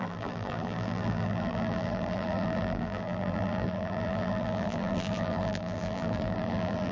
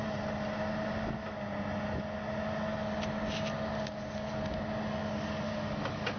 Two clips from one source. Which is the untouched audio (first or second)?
second